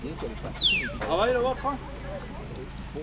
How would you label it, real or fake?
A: real